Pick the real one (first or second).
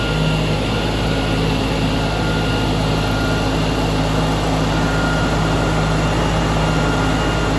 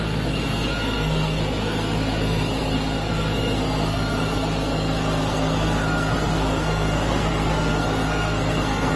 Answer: first